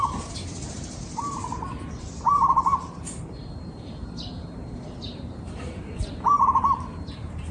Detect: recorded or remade remade